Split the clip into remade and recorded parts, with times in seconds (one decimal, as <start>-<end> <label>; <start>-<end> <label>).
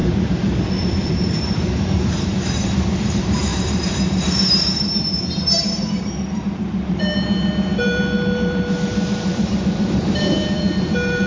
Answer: 0.0-1.1 recorded; 1.1-11.3 remade